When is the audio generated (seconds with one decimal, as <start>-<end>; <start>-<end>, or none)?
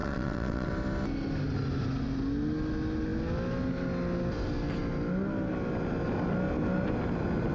0.0-0.7